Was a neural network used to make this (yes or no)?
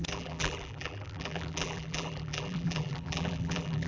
yes